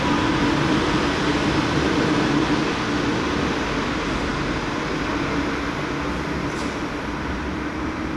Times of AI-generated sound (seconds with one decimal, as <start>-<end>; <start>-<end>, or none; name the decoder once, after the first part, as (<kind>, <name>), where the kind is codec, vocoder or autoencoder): none

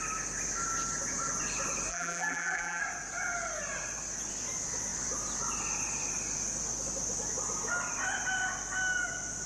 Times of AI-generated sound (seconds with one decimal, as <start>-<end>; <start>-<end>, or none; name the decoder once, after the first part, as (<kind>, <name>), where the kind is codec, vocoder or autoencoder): 1.9-2.8 (vocoder, BigVGAN v2)

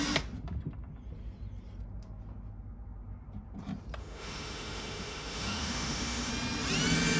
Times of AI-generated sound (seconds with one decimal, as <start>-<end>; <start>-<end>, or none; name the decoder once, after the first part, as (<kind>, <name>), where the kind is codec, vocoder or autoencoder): 4.0-6.3 (autoencoder, DAC-VAE)

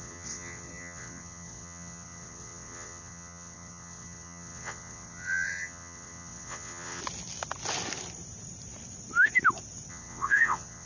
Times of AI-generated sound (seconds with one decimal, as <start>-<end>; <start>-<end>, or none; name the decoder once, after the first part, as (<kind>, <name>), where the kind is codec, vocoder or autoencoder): 0.0-7.0 (vocoder, WaveNeXt); 9.9-10.9